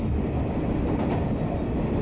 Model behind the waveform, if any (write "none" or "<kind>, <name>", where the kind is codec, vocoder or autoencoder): none